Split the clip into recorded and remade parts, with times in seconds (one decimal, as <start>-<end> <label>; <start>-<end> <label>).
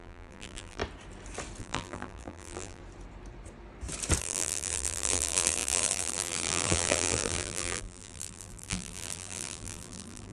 0.0-0.8 remade; 0.8-1.6 recorded; 1.6-2.8 remade; 2.8-4.2 recorded; 4.2-10.3 remade